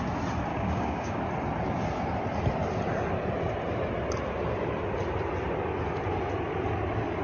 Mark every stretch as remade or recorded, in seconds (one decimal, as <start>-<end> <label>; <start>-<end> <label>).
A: 0.0-0.5 recorded; 0.5-1.2 remade; 1.2-7.2 recorded